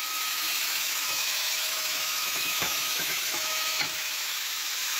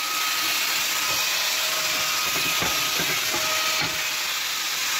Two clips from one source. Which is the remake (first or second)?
first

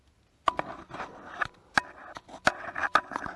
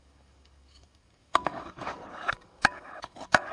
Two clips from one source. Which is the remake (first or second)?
second